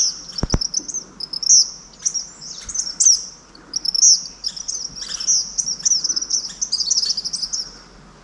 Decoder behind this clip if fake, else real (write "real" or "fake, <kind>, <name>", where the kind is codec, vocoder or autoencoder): real